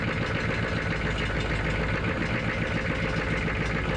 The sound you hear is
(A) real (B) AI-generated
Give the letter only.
A